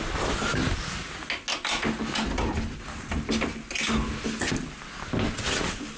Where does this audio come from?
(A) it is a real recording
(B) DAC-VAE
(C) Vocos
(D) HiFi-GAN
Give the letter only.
A